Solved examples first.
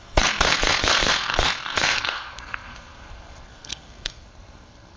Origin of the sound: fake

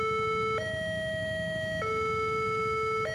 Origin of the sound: real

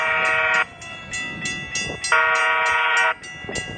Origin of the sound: real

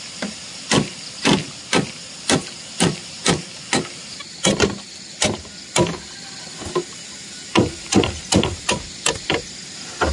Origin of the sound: real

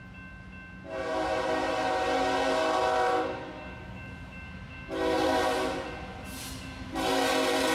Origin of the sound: real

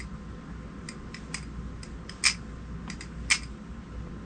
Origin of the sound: real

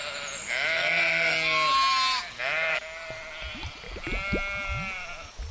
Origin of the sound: real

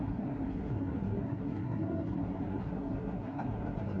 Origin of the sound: fake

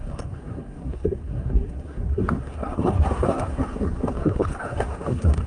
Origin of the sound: fake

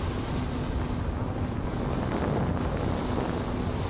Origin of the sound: real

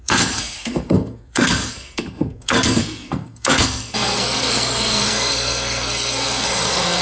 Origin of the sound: fake